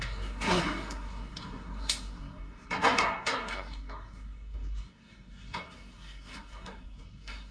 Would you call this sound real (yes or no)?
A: no